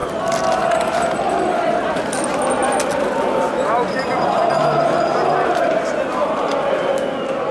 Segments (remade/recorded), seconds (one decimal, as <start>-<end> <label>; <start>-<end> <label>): 0.0-7.5 recorded